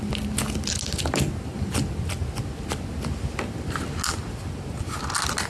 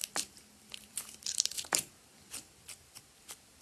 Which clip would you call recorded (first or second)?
first